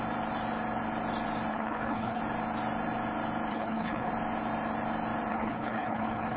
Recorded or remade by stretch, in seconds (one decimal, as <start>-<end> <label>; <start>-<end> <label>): 0.0-1.5 recorded; 1.5-2.2 remade; 2.2-3.5 recorded; 3.5-4.1 remade; 4.1-5.3 recorded; 5.3-6.4 remade

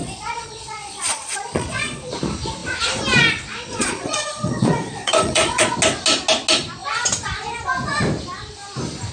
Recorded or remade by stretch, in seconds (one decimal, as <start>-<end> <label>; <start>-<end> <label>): 0.0-2.1 remade; 2.1-3.7 recorded; 3.7-5.7 remade; 5.7-9.1 recorded

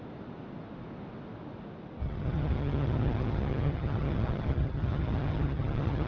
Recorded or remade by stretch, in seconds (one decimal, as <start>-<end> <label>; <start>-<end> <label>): 0.0-2.0 recorded; 2.0-6.1 remade

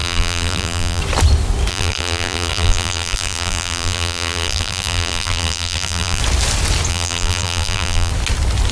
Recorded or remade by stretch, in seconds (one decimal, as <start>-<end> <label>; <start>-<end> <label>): 0.0-1.0 remade; 1.0-1.7 recorded; 1.7-6.2 remade; 6.2-6.9 recorded; 6.9-8.1 remade; 8.1-8.7 recorded

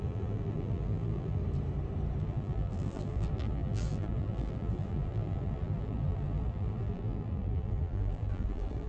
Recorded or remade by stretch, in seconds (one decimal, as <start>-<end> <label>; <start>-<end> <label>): 0.0-1.4 remade; 1.4-2.2 recorded; 2.2-8.9 remade

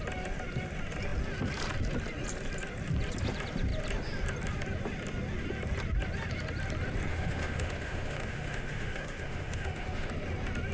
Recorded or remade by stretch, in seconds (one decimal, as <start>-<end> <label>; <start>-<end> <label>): 0.0-7.1 recorded; 7.1-10.1 remade; 10.1-10.7 recorded